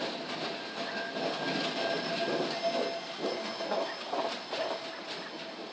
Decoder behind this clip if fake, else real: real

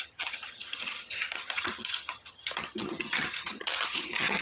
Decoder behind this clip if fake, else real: fake, vocoder, HiFi-GAN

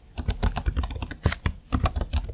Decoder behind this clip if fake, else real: real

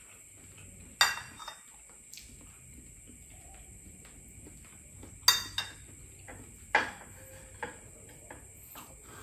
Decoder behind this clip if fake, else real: real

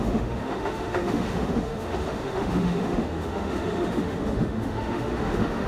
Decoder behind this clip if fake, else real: fake, autoencoder, DAC-VAE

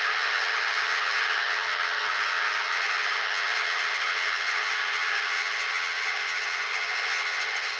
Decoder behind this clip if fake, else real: fake, vocoder, HiFi-GAN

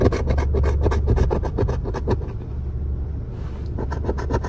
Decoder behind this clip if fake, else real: real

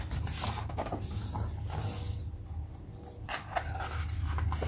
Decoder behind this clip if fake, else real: real